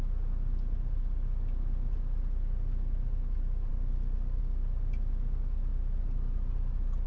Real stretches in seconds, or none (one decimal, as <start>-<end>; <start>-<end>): 0.0-7.1